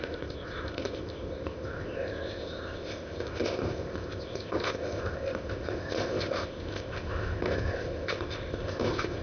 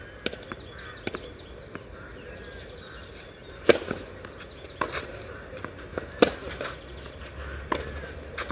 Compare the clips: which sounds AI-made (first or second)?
first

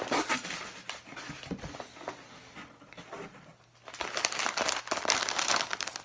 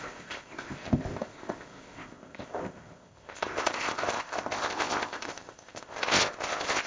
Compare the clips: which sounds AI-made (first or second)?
second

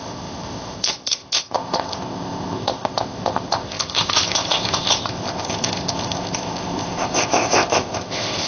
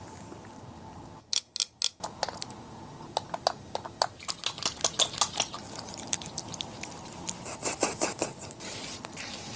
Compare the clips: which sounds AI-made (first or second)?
first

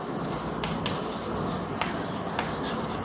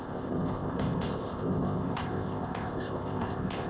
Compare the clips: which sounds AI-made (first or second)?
second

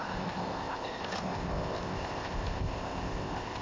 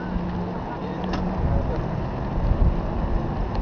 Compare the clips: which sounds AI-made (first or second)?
first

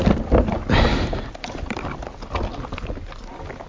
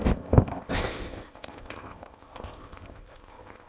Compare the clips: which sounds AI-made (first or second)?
second